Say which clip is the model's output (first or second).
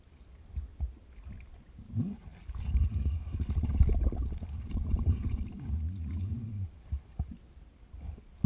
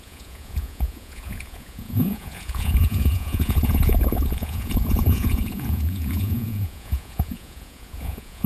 second